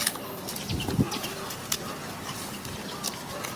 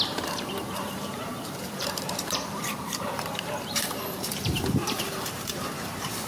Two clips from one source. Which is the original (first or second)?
first